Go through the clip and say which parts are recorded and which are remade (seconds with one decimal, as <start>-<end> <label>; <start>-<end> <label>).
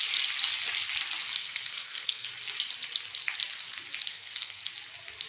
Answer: 0.0-1.4 recorded; 1.4-2.3 remade; 2.3-4.1 recorded; 4.1-4.6 remade; 4.6-5.3 recorded